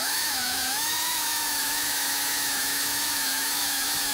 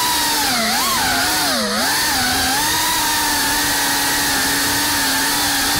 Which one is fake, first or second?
first